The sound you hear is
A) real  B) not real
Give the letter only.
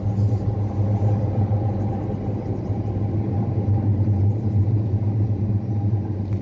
A